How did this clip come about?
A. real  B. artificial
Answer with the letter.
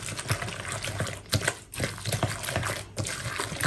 A